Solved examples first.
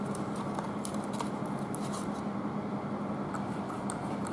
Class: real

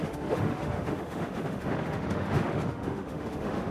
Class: fake